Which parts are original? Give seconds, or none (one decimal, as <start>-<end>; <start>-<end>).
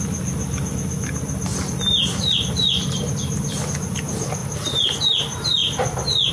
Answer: 0.0-1.5; 3.1-4.4; 5.0-5.6